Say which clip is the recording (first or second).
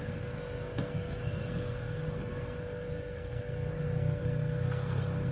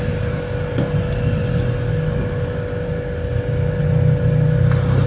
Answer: second